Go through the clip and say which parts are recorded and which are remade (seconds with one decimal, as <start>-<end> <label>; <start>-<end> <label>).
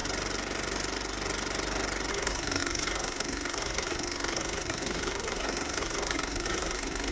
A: 0.0-2.1 recorded; 2.1-7.1 remade